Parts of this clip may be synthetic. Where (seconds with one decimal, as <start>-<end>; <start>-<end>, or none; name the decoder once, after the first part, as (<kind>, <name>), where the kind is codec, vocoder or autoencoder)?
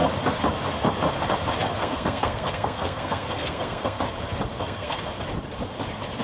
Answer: 1.8-4.0 (codec, SNAC); 4.5-5.0